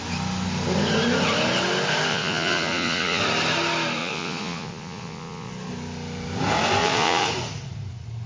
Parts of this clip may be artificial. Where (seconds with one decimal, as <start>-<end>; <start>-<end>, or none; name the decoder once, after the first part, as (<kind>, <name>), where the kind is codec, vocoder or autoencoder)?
2.1-3.2 (vocoder, Vocos); 4.0-5.5; 6.8-7.3

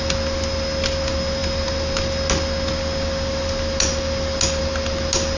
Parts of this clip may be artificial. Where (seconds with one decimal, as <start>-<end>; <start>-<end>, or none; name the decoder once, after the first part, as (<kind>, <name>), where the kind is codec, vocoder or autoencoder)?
none

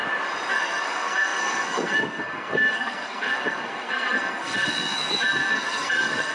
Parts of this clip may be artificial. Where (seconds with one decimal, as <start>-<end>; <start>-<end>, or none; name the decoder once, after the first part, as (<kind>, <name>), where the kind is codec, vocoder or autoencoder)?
0.5-6.3 (codec, SNAC)

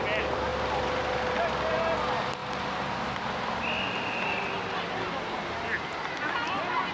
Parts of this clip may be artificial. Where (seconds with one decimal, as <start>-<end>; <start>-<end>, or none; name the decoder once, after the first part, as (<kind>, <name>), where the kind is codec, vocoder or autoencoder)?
0.5-2.0 (vocoder, BigVGAN v2)

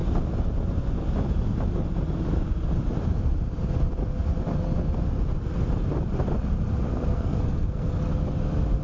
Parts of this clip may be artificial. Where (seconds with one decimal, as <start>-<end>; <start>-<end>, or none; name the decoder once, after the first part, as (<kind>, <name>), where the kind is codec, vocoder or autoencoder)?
7.1-7.9 (codec, SNAC)